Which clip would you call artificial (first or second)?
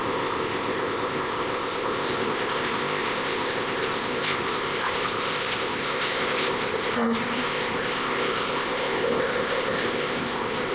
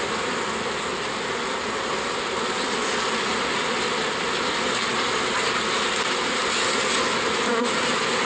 first